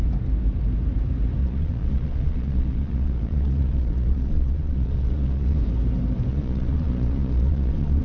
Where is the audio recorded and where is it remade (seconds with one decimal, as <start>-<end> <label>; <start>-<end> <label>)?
0.0-1.4 recorded; 1.4-5.6 remade; 5.6-6.3 recorded; 6.3-8.0 remade

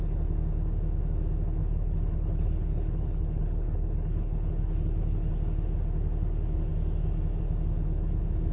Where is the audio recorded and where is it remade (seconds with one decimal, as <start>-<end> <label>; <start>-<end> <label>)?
0.0-1.6 recorded; 1.6-5.3 remade; 5.3-8.5 recorded

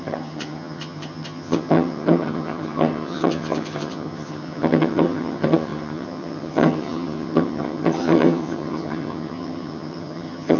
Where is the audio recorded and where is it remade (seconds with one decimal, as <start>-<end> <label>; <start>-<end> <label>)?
0.0-10.6 remade

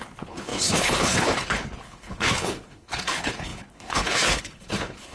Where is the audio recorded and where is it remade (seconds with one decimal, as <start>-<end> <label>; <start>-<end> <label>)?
0.0-5.1 remade

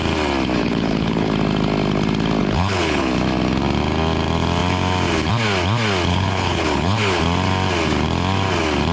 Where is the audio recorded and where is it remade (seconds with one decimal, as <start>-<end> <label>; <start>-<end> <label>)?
0.0-0.6 recorded; 0.6-1.3 remade; 1.3-2.4 recorded; 2.4-3.1 remade; 3.1-6.1 recorded; 6.1-7.2 remade; 7.2-8.9 recorded

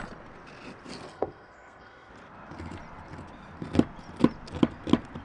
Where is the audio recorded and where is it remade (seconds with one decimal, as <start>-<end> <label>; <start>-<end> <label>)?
0.0-1.1 recorded; 1.1-2.1 remade; 2.1-5.2 recorded

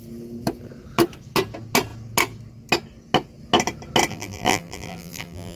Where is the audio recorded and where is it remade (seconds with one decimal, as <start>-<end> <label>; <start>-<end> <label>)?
0.0-4.1 recorded; 4.1-5.6 remade

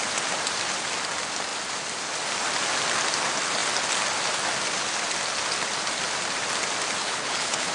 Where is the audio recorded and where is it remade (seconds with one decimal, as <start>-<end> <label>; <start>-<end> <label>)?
0.0-7.0 recorded; 7.0-7.7 remade